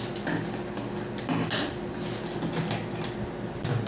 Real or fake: real